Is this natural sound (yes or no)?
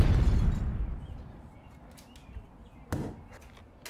yes